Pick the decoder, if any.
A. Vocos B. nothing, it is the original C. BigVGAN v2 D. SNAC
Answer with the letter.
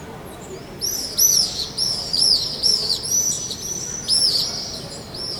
B